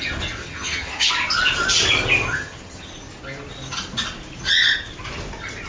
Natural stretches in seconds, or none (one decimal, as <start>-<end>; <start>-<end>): 0.0-0.4; 1.1-2.3; 2.9-5.7